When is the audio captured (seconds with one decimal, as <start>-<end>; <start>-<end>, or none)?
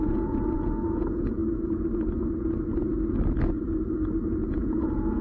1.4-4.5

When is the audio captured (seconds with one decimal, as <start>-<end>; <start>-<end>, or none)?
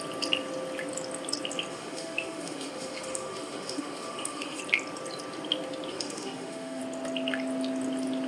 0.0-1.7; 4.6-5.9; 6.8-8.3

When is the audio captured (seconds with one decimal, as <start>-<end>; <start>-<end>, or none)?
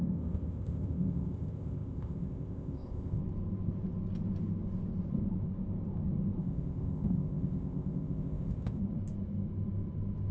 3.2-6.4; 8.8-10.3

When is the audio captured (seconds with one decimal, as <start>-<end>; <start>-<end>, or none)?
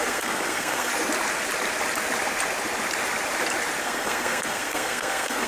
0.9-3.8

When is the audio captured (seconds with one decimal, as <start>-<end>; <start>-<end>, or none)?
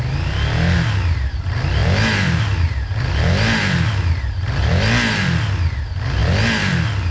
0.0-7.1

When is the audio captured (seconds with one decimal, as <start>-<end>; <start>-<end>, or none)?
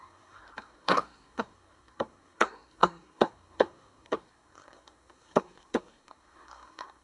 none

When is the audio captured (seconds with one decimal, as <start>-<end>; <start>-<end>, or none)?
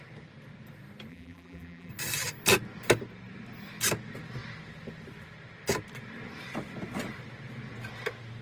0.0-1.1; 1.9-8.4